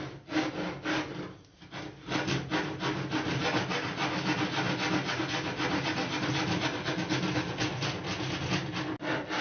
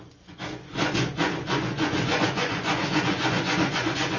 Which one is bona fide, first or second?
first